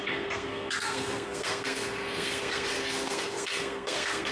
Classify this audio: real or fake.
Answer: fake